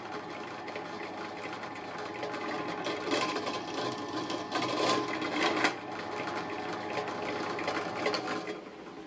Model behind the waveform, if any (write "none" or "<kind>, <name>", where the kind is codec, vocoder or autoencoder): none